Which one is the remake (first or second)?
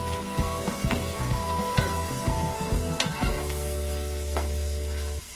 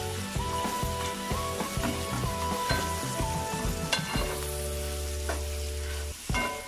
first